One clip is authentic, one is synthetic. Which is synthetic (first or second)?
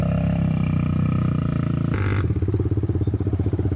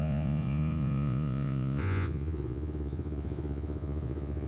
second